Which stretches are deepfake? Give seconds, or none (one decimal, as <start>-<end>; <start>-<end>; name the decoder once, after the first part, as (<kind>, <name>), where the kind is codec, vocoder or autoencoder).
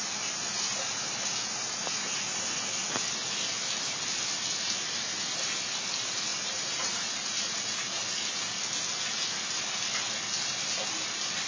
6.3-8.0 (vocoder, BigVGAN v2)